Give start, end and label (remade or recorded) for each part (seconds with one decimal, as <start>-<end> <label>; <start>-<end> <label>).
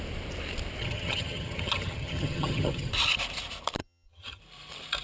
0.0-0.8 recorded; 0.8-2.9 remade; 2.9-3.8 recorded; 3.8-4.4 remade; 4.4-5.0 recorded